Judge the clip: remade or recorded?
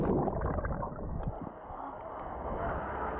recorded